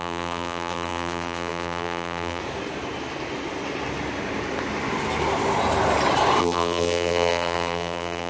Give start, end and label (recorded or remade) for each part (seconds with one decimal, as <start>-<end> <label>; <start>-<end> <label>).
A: 0.0-2.4 remade; 2.4-6.4 recorded; 6.4-8.3 remade